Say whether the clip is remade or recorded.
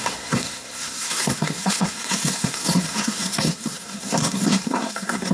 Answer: remade